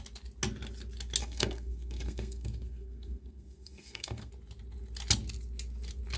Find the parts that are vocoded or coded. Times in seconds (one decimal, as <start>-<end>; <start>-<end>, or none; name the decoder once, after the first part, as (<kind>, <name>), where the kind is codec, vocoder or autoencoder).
1.2-4.3 (codec, SNAC)